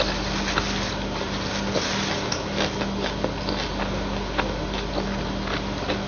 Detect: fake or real real